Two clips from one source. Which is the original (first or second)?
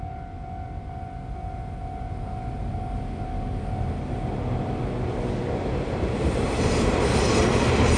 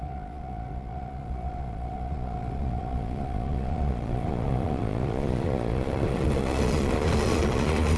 first